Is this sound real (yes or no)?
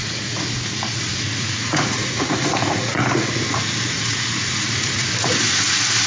no